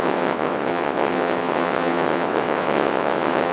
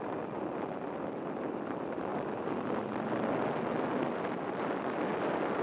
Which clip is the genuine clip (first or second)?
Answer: second